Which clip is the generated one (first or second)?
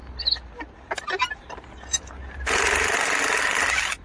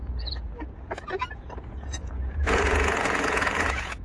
second